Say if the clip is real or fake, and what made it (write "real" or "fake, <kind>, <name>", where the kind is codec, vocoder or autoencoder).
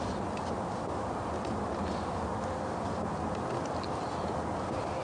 real